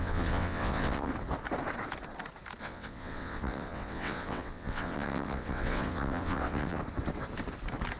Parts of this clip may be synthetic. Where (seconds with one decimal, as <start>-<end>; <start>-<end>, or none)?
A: 0.0-1.1; 2.6-6.8